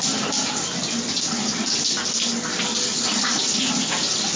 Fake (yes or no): no